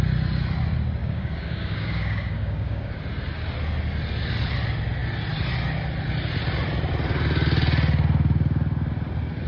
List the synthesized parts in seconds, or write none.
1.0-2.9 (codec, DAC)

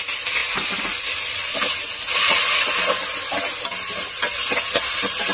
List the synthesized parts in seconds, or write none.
none

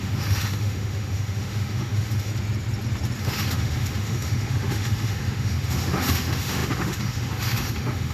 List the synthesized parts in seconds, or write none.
0.0-2.3 (autoencoder, DAC-VAE); 3.2-8.1

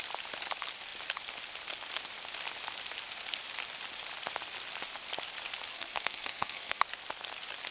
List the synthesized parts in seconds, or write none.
5.7-6.8 (codec, SNAC)